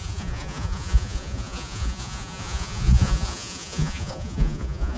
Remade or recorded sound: remade